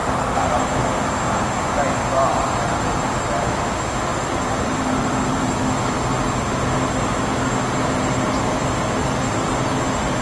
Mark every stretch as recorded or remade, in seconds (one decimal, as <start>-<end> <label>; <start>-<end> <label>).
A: 0.0-0.6 remade; 0.6-4.1 recorded; 4.1-5.5 remade; 5.5-10.2 recorded